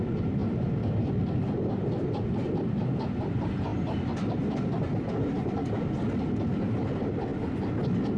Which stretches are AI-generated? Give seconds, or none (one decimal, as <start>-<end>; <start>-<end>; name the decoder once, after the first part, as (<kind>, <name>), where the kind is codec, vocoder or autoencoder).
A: none

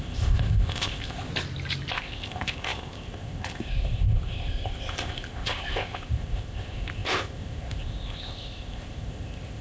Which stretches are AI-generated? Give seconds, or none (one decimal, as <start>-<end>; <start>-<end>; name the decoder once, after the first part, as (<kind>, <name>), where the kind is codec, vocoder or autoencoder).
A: 0.0-1.3 (codec, ZipCodec); 1.9-9.6

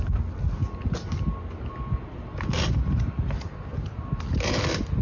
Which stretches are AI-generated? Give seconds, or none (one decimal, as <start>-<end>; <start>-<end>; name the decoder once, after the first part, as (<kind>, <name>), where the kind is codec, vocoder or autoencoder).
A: none

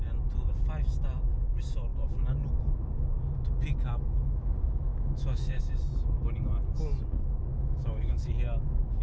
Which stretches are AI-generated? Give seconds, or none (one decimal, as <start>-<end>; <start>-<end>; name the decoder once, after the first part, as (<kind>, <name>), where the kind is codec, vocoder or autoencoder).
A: 4.9-5.6 (autoencoder, DAC-VAE); 7.5-8.3

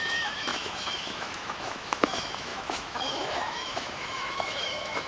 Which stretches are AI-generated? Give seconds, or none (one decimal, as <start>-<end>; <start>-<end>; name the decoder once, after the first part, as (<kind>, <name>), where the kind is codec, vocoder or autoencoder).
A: 0.0-5.1 (autoencoder, DAC-VAE)

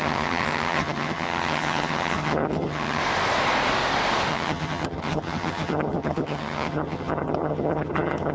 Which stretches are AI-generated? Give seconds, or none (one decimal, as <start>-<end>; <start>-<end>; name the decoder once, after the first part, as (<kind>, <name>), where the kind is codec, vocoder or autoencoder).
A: 0.0-3.0 (vocoder, HiFi-GAN); 4.3-8.3